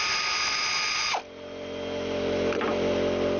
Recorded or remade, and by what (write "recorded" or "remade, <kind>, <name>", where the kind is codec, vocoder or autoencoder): recorded